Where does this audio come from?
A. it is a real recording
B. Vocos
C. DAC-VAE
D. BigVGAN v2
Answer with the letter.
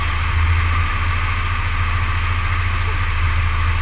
A